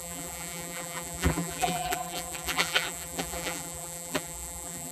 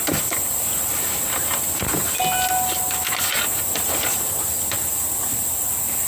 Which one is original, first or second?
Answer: second